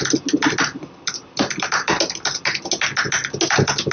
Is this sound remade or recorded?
recorded